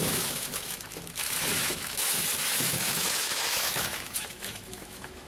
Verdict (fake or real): fake